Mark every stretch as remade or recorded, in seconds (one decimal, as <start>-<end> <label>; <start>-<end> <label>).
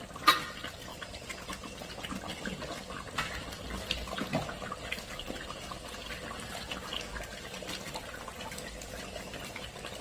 0.0-10.0 recorded